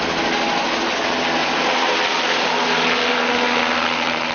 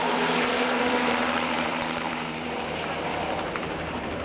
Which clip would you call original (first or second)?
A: first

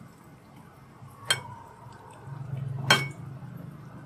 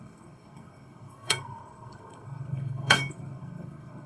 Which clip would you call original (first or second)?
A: first